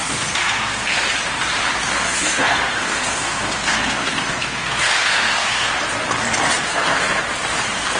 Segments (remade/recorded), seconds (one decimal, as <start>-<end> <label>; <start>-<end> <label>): 0.0-1.1 remade; 1.1-1.9 recorded; 1.9-5.7 remade; 5.7-6.7 recorded; 6.7-7.2 remade; 7.2-8.0 recorded